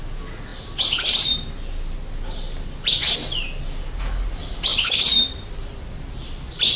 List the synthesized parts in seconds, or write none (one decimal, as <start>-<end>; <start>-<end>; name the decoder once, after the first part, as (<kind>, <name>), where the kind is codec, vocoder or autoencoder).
4.7-6.3 (vocoder, BigVGAN v2)